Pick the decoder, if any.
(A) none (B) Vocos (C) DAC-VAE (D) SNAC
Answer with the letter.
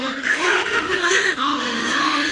C